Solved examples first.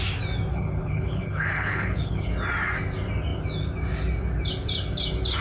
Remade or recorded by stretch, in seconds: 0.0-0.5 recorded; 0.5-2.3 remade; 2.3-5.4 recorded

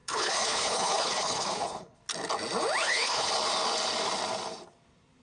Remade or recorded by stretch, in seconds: 0.0-2.0 remade; 2.0-2.8 recorded; 2.8-3.3 remade; 3.3-5.2 recorded

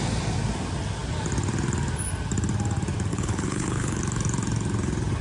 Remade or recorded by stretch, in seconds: 0.0-3.1 recorded; 3.1-4.0 remade; 4.0-5.2 recorded

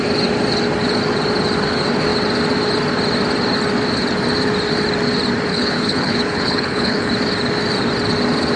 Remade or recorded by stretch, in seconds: 0.0-5.5 recorded; 5.5-7.1 remade; 7.1-8.6 recorded

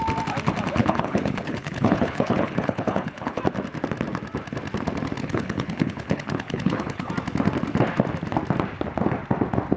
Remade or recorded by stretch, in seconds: 0.0-0.8 recorded; 0.8-3.4 remade; 3.4-5.2 recorded; 5.2-7.1 remade; 7.1-9.8 recorded